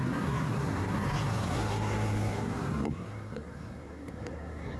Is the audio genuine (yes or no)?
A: no